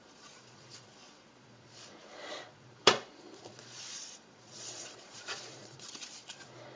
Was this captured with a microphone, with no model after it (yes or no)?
no